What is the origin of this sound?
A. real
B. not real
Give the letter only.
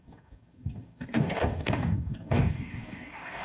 B